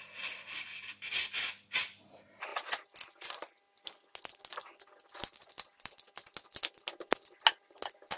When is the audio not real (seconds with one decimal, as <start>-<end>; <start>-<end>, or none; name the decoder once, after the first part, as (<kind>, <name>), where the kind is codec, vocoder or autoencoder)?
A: none